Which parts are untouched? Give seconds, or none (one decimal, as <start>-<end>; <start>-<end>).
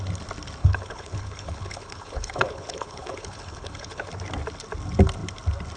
0.0-0.6; 4.1-5.8